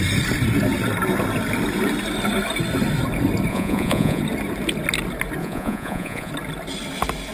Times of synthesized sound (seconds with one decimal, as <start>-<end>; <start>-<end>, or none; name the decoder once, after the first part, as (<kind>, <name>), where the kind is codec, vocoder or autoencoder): 3.5-4.2 (vocoder, Vocos); 5.4-6.3